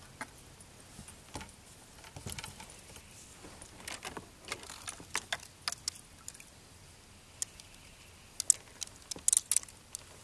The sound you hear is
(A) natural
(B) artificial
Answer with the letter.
A